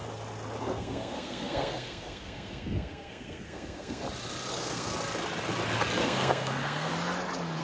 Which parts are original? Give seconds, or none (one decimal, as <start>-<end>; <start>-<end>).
0.0-0.6; 4.0-4.5; 4.9-6.0; 6.9-7.6

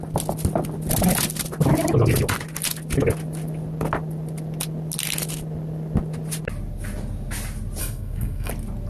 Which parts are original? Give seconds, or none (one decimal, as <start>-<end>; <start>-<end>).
0.0-7.8; 8.5-8.9